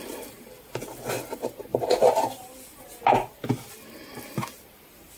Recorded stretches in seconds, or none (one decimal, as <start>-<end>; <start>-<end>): 0.0-5.2

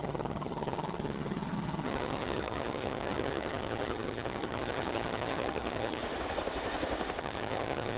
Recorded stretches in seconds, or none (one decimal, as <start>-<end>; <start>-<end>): 6.0-7.2

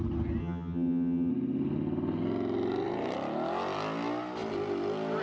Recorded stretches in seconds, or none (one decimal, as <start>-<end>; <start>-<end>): 0.0-0.4; 1.3-5.2